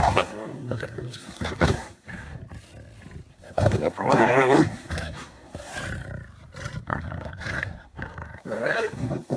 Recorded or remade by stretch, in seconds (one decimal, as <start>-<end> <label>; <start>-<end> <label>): 0.0-2.4 remade; 2.4-3.3 recorded; 3.3-5.7 remade; 5.7-6.8 recorded; 6.8-9.4 remade